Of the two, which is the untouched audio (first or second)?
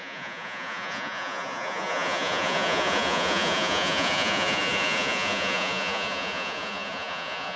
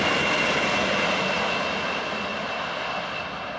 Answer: second